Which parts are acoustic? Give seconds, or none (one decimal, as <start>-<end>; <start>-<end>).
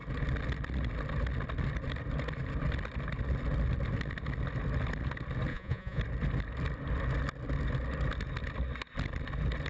0.0-5.5; 6.0-9.7